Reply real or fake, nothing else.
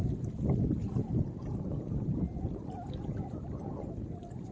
real